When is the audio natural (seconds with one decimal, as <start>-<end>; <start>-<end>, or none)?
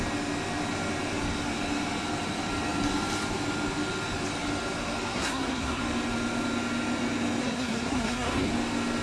0.0-5.1; 5.8-7.4; 8.5-9.0